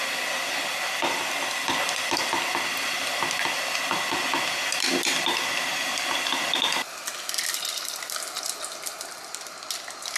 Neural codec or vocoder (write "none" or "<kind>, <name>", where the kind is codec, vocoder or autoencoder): none